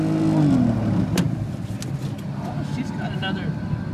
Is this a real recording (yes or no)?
yes